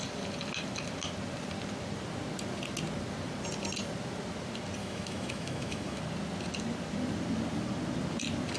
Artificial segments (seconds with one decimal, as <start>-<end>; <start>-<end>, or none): 4.8-6.0